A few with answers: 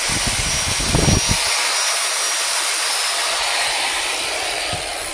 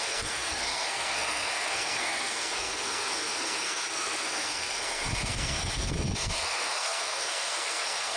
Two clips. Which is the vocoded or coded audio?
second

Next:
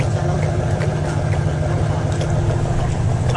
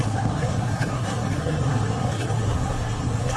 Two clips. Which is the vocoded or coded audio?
second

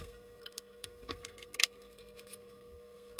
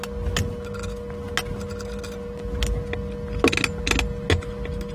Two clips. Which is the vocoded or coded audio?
first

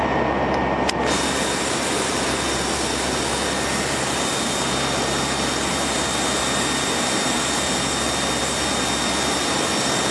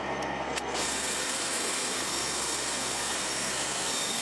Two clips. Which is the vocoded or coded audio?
second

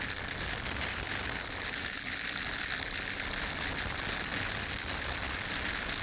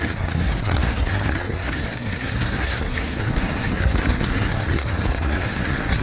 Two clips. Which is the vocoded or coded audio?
second